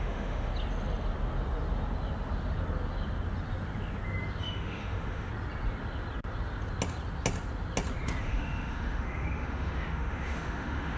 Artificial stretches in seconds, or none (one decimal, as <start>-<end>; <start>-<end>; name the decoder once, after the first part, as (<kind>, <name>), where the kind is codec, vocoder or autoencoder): 0.0-0.5 (autoencoder, DAC-VAE); 4.4-5.3; 8.2-11.0